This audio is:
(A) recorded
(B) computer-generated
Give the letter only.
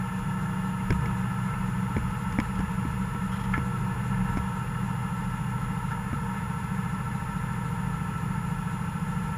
A